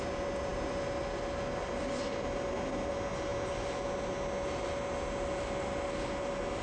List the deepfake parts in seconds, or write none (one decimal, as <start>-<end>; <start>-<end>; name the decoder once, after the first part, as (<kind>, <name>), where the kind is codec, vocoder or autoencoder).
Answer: none